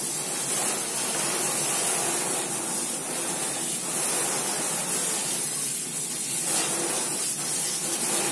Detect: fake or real real